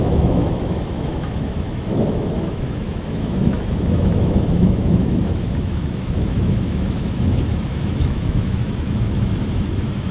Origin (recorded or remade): remade